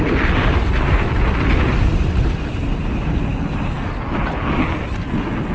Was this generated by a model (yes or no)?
no